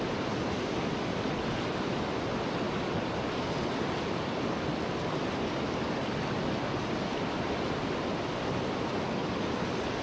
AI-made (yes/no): no